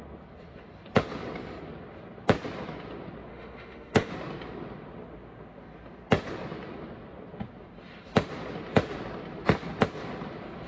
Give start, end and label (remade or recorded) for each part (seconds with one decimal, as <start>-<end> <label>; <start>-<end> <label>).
0.0-3.3 recorded; 3.3-4.1 remade; 4.1-10.7 recorded